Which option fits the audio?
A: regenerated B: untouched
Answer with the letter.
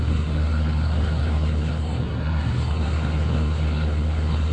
A